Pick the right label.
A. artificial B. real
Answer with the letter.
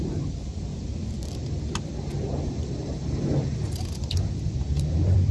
A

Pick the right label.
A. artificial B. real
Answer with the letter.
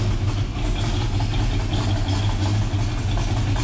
B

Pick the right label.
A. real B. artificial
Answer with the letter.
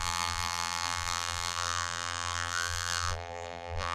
B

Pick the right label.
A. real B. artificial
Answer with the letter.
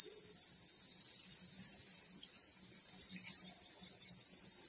A